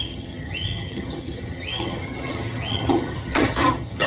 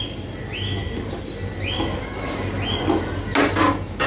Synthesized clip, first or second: first